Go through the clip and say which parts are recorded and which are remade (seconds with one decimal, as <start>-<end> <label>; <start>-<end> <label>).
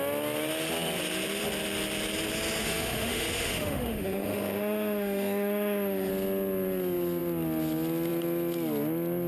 0.0-2.6 recorded; 2.6-6.1 remade; 6.1-9.3 recorded